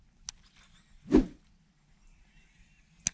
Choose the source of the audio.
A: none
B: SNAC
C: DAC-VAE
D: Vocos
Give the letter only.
A